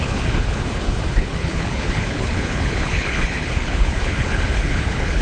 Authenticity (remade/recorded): remade